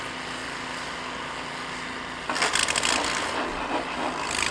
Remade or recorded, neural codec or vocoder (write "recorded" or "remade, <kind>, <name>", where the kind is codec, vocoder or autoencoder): recorded